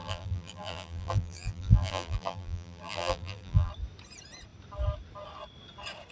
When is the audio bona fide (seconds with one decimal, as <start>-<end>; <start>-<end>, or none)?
3.7-6.1